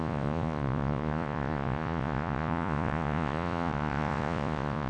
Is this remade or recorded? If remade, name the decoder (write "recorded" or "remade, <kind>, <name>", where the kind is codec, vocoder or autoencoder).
remade, vocoder, Vocos